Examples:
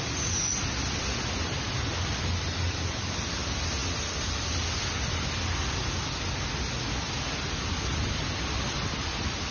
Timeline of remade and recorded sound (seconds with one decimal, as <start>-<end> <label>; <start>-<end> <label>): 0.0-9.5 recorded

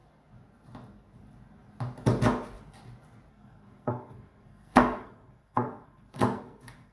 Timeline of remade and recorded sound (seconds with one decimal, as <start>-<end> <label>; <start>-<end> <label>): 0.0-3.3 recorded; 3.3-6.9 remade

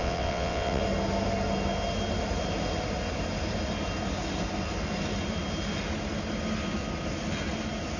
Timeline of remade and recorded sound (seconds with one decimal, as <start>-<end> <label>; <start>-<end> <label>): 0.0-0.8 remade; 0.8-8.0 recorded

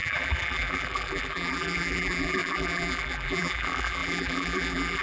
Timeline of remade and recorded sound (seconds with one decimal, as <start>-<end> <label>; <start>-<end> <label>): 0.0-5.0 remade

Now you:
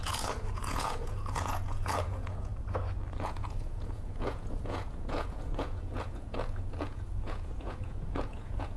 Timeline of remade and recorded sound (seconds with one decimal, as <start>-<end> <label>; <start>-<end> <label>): 0.0-2.5 remade; 2.5-3.2 recorded; 3.2-8.8 remade